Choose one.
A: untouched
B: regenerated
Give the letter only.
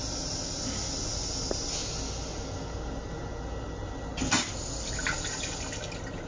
A